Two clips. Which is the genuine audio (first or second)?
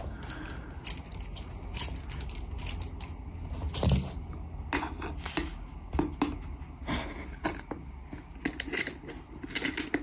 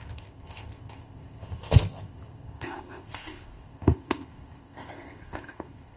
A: first